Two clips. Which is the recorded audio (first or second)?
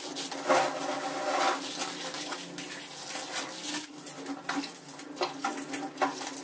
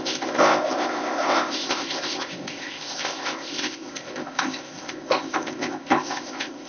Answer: first